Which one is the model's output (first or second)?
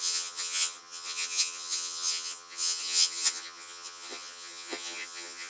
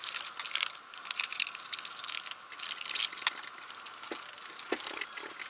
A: first